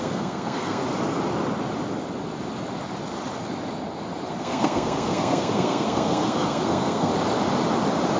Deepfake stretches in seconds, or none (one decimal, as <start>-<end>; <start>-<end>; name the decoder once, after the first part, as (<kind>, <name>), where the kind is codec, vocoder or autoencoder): 0.0-0.8 (codec, SNAC); 4.3-7.1